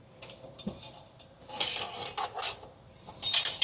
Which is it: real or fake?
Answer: real